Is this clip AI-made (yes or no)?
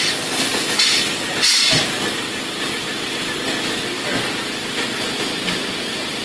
no